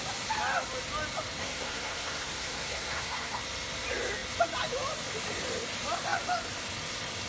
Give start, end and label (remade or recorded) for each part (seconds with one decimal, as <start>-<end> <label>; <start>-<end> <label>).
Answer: 0.0-1.4 recorded; 1.4-3.4 remade; 3.4-7.3 recorded